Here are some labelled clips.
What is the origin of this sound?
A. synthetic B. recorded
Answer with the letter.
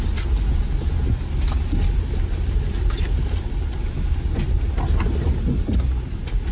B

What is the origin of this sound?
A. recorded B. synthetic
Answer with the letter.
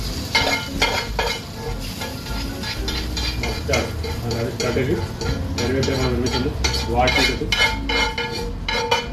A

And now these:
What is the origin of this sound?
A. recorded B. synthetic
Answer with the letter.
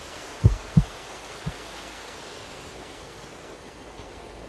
B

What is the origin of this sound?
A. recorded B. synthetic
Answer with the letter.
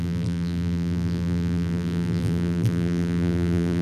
B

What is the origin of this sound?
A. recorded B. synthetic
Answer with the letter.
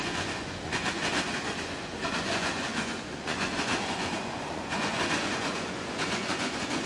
B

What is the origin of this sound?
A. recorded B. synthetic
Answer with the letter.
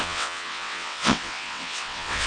B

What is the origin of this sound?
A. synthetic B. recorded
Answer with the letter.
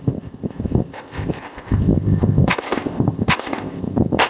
A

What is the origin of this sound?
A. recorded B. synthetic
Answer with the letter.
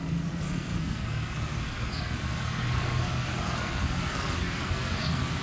B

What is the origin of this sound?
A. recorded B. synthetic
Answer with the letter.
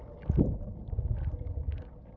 A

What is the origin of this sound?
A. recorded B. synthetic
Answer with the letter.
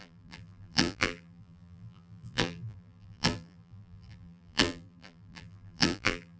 B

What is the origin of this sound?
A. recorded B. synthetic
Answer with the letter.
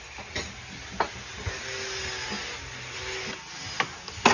A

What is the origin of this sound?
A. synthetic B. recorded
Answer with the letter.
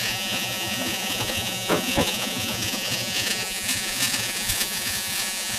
A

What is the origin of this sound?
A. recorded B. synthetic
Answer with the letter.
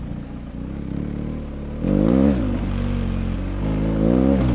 A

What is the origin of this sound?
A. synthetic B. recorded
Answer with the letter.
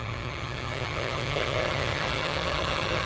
A